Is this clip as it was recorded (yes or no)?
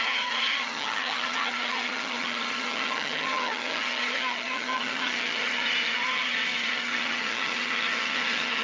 no